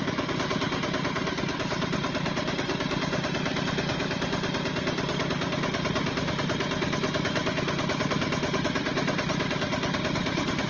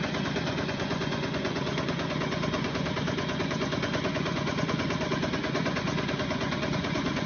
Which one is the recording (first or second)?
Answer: first